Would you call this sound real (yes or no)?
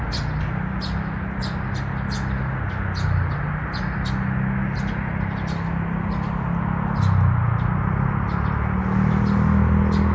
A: yes